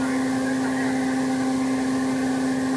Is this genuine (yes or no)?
yes